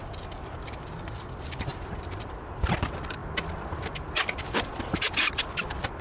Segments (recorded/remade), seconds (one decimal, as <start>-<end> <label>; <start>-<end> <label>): 0.0-6.0 recorded